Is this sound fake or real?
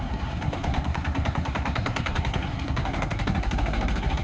fake